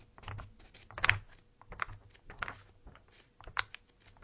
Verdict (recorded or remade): recorded